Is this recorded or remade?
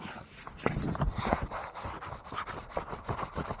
recorded